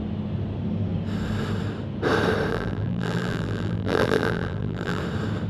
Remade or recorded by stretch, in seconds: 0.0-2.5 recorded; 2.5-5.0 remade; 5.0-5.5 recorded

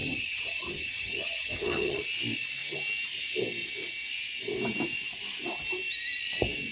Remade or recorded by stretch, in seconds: 0.0-2.0 remade; 2.0-6.7 recorded

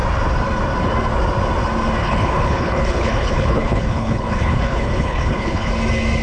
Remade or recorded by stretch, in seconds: 0.0-2.0 recorded; 2.0-5.7 remade; 5.7-6.2 recorded

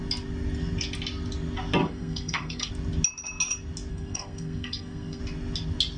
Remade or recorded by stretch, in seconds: 0.0-1.8 recorded; 1.8-2.7 remade; 2.7-3.9 recorded; 3.9-5.2 remade; 5.2-6.0 recorded

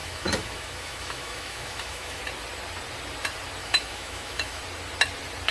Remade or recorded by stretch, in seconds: 0.0-2.2 remade; 2.2-3.6 recorded; 3.6-4.6 remade; 4.6-5.5 recorded